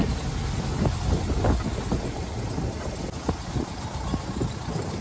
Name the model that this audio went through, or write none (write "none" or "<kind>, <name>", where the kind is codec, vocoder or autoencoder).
none